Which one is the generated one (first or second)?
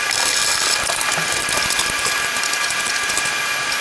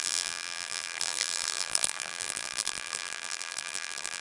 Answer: second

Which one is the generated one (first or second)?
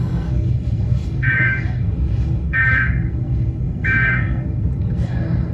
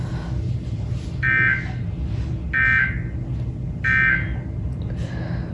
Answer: first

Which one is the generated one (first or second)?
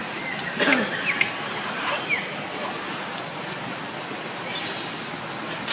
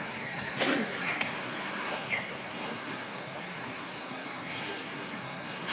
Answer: second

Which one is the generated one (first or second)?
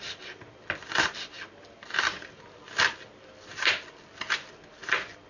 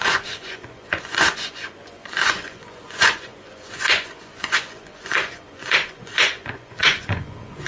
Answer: second